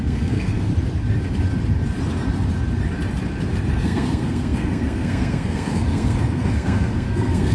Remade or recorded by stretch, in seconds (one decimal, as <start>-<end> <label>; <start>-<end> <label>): 0.0-0.7 remade; 0.7-3.7 recorded; 3.7-7.5 remade